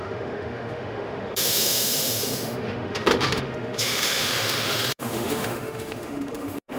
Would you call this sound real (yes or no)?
no